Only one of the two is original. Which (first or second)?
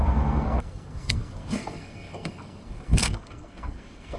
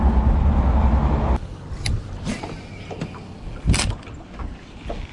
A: second